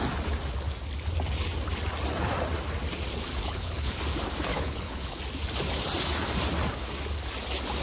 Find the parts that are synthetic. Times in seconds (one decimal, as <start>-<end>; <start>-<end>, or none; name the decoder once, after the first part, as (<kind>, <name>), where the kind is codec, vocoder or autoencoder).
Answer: 3.3-4.0 (codec, HILCodec); 4.5-5.2